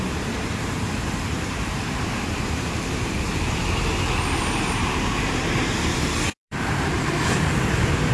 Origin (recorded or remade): remade